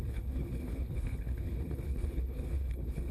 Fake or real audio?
fake